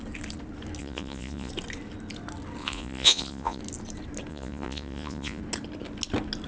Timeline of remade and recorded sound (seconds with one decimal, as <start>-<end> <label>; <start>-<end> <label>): 0.0-0.8 recorded; 0.8-1.5 remade; 1.5-2.6 recorded; 2.6-3.6 remade; 3.6-4.3 recorded; 4.3-5.4 remade; 5.4-6.5 recorded